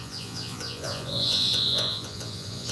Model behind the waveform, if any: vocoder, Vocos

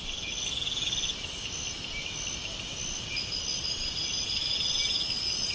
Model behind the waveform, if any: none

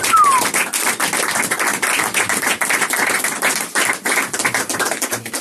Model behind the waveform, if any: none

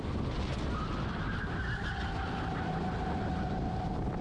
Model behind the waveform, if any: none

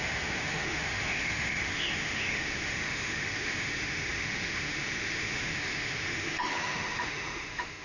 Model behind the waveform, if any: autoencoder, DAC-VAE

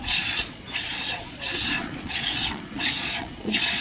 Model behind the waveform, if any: vocoder, Vocos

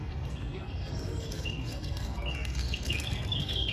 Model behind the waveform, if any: codec, SNAC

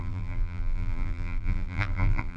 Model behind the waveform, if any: vocoder, BigVGAN v2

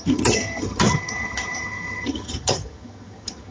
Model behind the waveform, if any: vocoder, HiFi-GAN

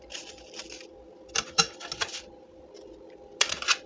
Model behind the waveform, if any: none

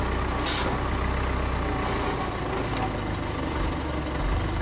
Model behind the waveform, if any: none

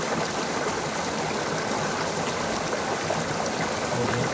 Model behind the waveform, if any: none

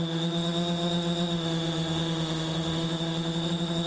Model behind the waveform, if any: autoencoder, DAC-VAE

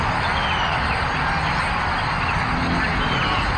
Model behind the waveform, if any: none